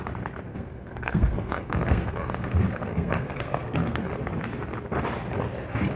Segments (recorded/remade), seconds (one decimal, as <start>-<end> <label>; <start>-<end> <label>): 0.0-0.5 recorded; 0.5-4.1 remade; 4.1-6.0 recorded

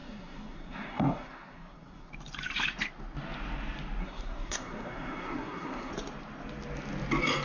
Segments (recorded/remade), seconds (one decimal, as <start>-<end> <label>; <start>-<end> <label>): 0.0-2.1 remade; 2.1-4.0 recorded; 4.0-5.9 remade; 5.9-7.4 recorded

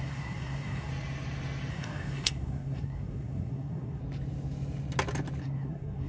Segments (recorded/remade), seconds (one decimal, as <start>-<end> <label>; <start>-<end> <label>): 0.0-0.9 remade; 0.9-1.7 recorded; 1.7-4.0 remade; 4.0-5.4 recorded; 5.4-6.1 remade

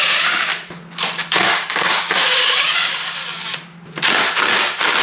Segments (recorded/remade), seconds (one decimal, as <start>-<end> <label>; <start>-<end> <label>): 0.0-0.5 remade; 0.5-1.3 recorded; 1.3-3.2 remade; 3.2-5.0 recorded

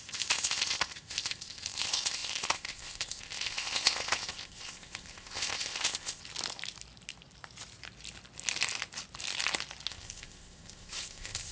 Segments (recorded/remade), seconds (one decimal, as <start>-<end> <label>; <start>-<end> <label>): 0.0-6.2 remade; 6.2-9.9 recorded; 9.9-11.5 remade